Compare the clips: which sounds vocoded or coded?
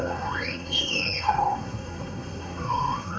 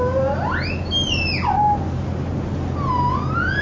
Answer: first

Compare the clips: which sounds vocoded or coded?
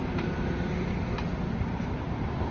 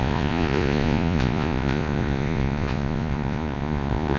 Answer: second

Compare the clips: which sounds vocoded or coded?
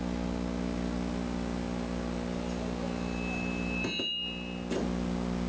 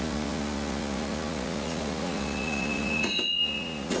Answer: second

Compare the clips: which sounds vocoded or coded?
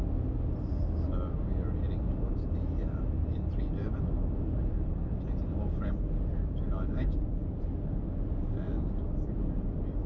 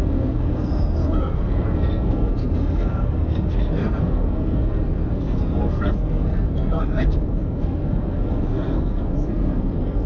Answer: second